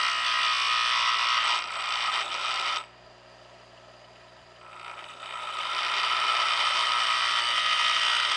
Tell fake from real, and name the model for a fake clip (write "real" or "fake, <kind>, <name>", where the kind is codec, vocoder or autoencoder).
real